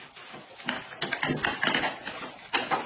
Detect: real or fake real